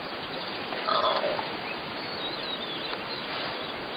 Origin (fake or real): real